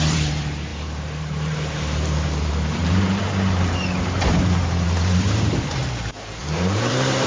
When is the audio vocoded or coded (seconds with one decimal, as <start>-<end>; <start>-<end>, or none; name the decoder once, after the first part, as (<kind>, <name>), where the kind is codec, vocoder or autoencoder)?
0.0-5.8 (vocoder, BigVGAN v2); 6.4-7.3